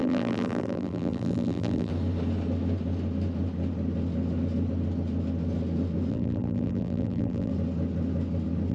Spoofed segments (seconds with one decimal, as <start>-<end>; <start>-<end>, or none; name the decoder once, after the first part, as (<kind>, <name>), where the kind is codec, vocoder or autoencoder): 0.0-1.9 (vocoder, BigVGAN v2); 6.1-7.5